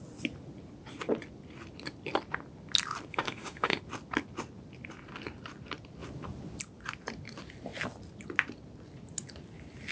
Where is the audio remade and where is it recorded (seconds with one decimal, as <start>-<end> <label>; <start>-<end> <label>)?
0.0-3.1 recorded; 3.1-3.8 remade; 3.8-9.9 recorded